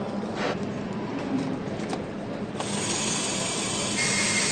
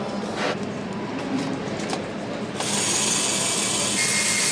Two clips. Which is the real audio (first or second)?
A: second